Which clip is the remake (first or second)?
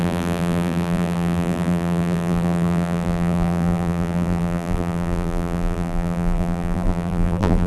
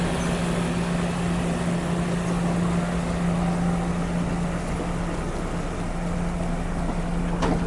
first